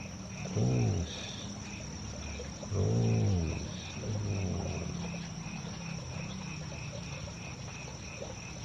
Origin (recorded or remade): recorded